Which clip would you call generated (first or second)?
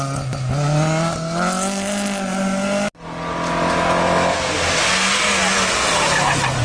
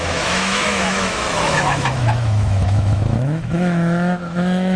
second